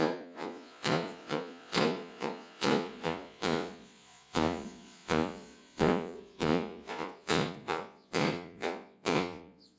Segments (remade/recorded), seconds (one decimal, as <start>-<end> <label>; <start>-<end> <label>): 0.0-9.8 remade